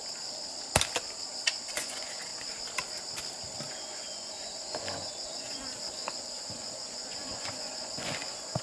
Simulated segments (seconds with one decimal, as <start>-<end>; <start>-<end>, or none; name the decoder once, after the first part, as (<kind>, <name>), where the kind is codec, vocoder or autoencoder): 1.7-2.3 (vocoder, Vocos); 3.7-8.6